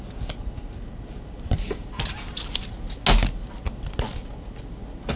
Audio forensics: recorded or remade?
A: recorded